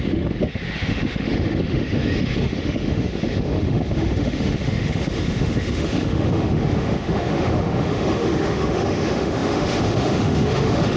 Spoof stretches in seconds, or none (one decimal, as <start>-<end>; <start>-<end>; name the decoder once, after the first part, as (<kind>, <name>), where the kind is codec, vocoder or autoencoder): 0.0-11.0 (autoencoder, DAC-VAE)